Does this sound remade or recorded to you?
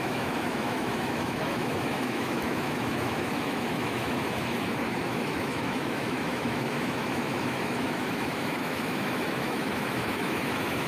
remade